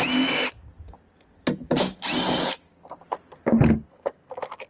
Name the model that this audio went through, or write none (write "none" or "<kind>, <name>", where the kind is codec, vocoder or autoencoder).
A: none